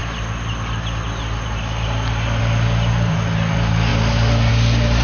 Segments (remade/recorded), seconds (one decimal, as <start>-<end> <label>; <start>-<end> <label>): 0.0-5.0 recorded